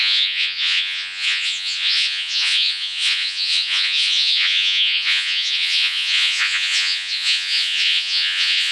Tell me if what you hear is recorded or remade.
remade